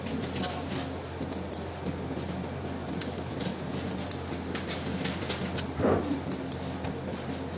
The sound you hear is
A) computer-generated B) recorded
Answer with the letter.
B